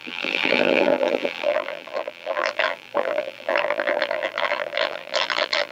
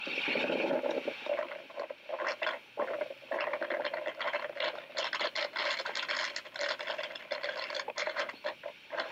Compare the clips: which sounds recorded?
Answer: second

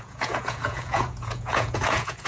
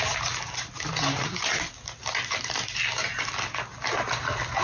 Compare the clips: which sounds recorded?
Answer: second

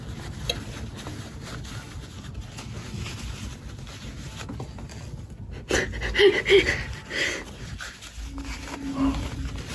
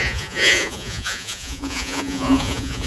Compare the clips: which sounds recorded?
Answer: first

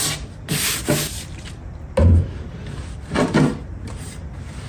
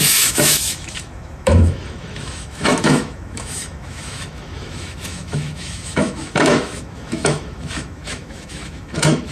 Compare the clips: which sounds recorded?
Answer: first